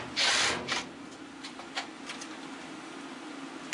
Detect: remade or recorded recorded